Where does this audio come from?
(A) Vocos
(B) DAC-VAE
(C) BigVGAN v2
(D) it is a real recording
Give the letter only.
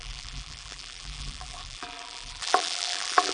C